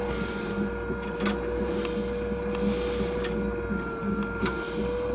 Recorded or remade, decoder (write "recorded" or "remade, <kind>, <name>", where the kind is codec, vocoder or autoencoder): recorded